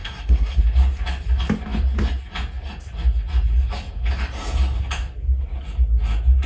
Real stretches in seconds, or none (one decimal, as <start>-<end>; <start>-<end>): 0.6-6.5